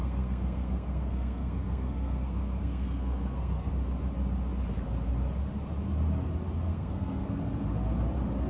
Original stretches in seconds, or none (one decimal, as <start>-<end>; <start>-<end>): 3.7-6.7; 7.4-8.5